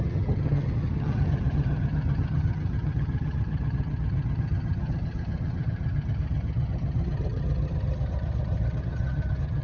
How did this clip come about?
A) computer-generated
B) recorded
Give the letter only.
A